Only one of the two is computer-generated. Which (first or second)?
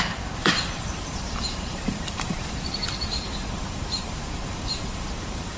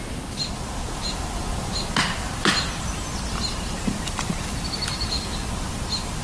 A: first